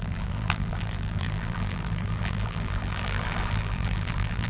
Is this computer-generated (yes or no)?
yes